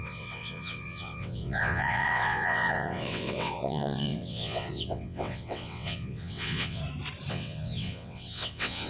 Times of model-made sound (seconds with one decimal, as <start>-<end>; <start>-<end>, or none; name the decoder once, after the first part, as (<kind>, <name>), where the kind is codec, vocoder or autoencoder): 0.0-6.8 (vocoder, WaveNeXt); 7.3-8.9